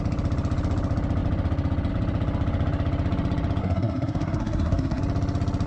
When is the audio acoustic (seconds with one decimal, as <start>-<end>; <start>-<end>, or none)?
0.0-3.6; 5.0-5.7